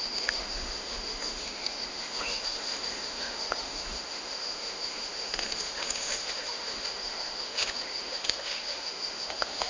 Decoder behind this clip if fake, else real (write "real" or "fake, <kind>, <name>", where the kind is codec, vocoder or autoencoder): fake, autoencoder, DAC-VAE